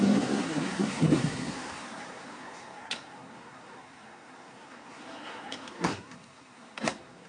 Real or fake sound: fake